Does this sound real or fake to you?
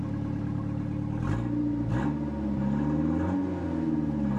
real